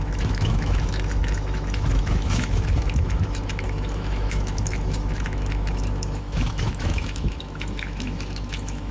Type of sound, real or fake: fake